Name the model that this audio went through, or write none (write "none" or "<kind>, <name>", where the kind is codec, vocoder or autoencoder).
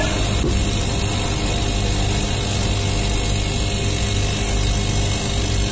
none